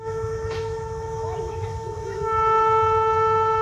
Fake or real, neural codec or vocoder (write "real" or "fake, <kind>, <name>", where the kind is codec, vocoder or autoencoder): fake, autoencoder, DAC-VAE